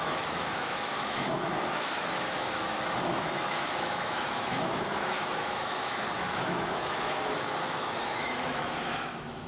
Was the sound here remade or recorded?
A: remade